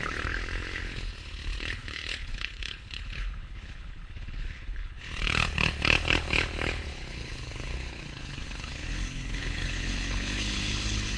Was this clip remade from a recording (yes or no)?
yes